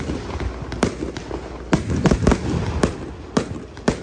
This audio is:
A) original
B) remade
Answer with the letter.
A